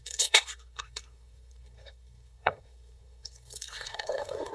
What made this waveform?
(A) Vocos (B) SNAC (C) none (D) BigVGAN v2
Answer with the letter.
B